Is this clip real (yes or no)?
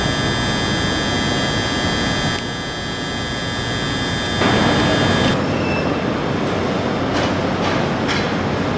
yes